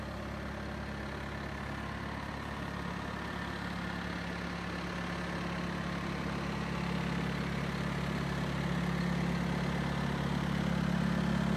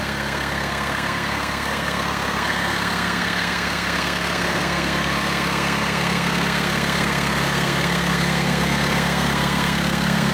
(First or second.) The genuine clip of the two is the first